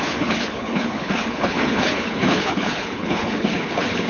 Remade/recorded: remade